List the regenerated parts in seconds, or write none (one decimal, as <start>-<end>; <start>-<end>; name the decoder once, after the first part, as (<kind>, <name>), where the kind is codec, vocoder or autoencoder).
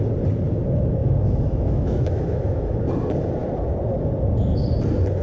1.0-2.8 (autoencoder, DAC-VAE)